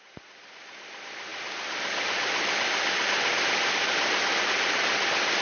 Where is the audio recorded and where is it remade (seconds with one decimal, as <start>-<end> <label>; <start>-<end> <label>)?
0.0-5.4 recorded